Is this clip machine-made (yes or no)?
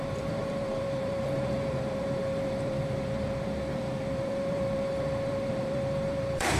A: yes